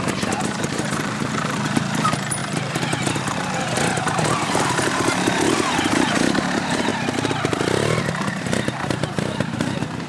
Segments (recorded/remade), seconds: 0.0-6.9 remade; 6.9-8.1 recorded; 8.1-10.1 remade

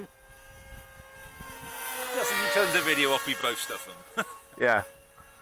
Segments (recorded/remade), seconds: 0.0-5.4 recorded

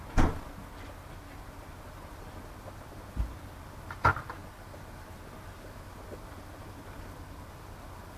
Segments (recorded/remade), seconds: 0.0-8.2 recorded